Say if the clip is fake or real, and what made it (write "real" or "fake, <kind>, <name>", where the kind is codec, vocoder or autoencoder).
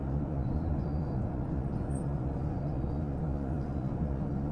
fake, vocoder, Vocos